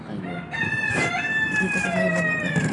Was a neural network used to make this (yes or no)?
no